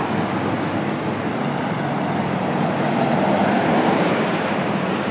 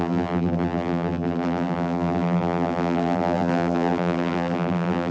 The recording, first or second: first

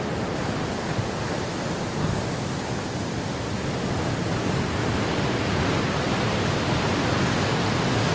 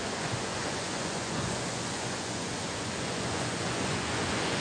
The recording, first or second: first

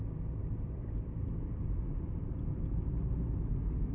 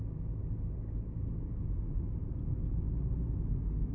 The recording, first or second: second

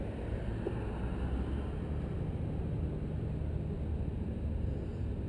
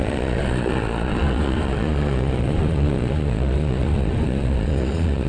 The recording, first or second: first